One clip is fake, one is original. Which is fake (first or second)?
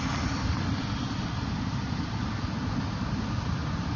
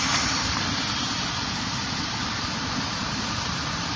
second